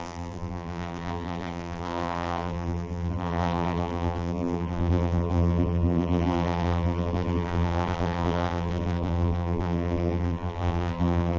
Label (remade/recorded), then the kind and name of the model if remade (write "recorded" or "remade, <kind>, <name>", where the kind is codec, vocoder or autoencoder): remade, vocoder, BigVGAN v2